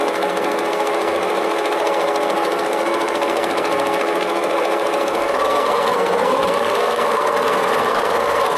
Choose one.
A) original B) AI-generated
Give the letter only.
B